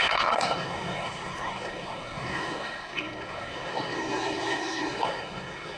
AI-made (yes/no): yes